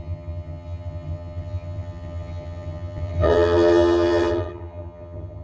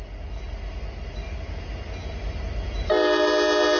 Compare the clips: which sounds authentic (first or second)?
second